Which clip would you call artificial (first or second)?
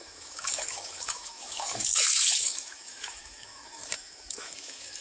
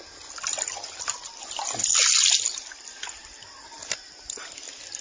first